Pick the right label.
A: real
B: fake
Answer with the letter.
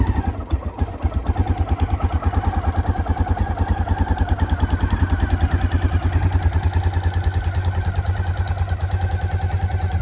A